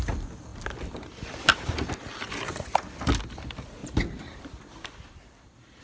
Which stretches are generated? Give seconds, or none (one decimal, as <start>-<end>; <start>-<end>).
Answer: 0.5-1.7; 3.8-5.8